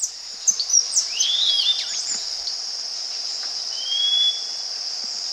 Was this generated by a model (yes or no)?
no